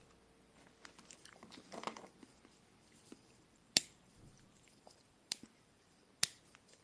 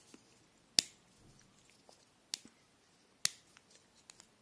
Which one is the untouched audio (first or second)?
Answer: second